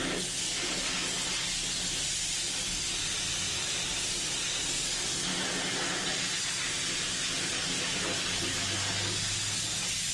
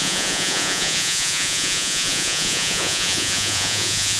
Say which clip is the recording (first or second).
first